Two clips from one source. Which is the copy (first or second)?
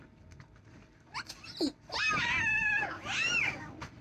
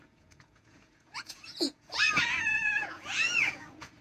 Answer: second